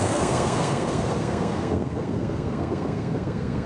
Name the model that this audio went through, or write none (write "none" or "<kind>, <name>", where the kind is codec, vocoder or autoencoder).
codec, SNAC